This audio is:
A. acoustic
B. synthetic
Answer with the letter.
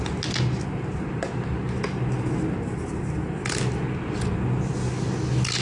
A